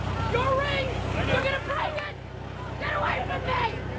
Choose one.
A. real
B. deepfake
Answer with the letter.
A